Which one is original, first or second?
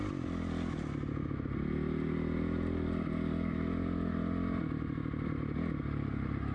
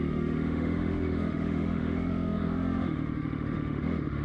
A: first